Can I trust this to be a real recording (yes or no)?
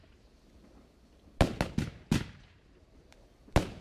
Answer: yes